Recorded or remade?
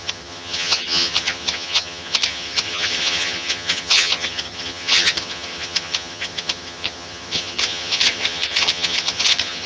remade